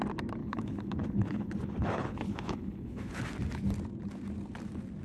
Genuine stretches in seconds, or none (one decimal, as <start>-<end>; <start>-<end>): 0.0-0.4; 3.2-5.0